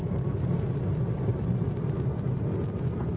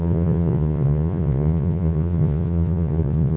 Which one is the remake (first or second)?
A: second